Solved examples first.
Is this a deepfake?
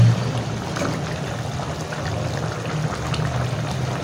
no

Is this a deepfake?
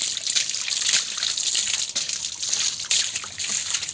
no